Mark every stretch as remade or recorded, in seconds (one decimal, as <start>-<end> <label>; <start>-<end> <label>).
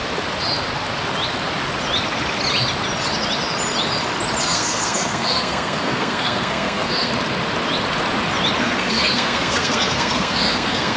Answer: 0.0-4.4 recorded; 4.4-7.1 remade; 7.1-8.6 recorded; 8.6-11.0 remade